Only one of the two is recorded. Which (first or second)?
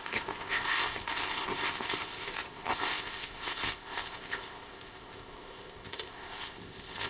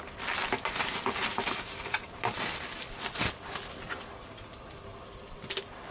second